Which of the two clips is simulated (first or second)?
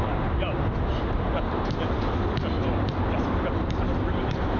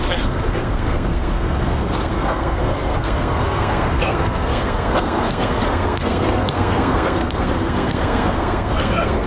second